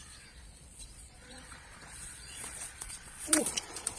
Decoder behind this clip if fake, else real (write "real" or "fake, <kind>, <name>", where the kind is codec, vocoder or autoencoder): fake, vocoder, Vocos